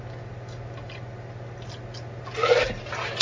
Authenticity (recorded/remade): recorded